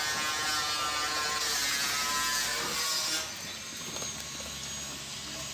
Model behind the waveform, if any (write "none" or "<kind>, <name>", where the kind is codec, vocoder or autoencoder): none